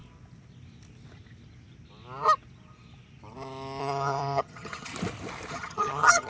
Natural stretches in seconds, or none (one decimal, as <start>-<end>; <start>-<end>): 0.0-3.8; 4.9-5.5